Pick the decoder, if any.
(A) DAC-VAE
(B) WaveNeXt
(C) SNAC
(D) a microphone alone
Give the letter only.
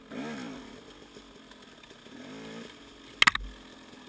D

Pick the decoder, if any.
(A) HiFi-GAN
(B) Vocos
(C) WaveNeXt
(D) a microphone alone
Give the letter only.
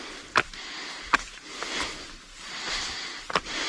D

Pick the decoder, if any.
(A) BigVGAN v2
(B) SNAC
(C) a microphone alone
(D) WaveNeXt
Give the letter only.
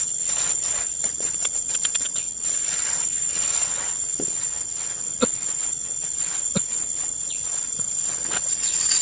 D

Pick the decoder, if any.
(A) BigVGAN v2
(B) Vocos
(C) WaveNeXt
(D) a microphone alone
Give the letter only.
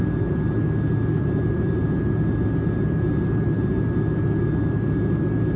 D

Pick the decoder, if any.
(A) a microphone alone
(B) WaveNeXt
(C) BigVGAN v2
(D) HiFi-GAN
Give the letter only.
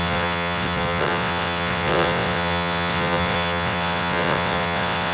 B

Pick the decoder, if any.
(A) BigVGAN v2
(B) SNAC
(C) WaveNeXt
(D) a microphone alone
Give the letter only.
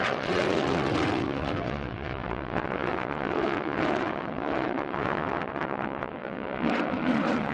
C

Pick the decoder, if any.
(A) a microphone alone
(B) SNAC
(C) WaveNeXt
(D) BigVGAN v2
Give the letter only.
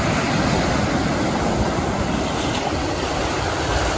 A